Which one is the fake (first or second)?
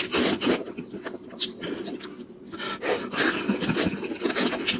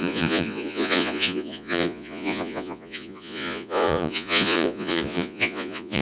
second